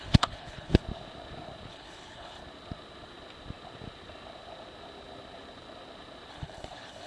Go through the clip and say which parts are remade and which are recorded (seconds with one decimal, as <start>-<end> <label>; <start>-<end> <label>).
0.0-0.8 remade; 0.8-1.7 recorded; 1.7-2.4 remade; 2.4-6.3 recorded; 6.3-7.1 remade